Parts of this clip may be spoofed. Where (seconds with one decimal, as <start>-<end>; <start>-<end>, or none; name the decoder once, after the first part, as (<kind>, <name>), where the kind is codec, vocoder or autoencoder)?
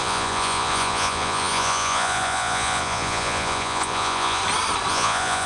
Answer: 0.0-4.4 (vocoder, Vocos); 4.9-5.5